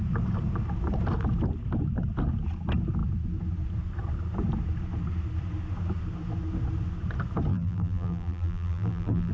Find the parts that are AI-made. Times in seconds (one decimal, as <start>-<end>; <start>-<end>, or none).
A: 7.5-9.3